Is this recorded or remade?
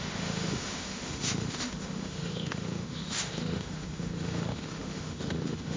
remade